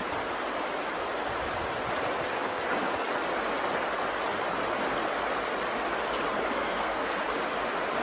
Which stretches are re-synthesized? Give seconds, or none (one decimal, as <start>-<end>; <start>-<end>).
6.6-7.1